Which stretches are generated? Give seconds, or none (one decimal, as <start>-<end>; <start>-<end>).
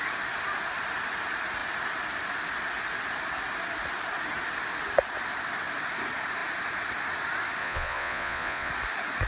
7.6-8.7